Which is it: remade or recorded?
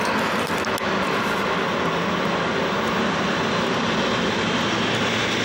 recorded